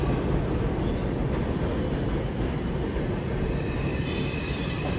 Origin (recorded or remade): recorded